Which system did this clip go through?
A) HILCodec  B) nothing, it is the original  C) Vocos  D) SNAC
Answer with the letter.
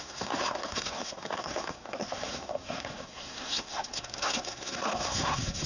D